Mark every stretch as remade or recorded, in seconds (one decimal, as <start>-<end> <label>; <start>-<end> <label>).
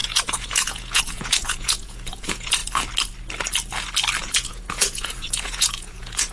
0.0-2.6 remade; 2.6-4.2 recorded; 4.2-6.3 remade